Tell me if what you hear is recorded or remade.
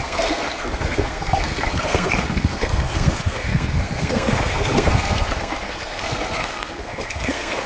remade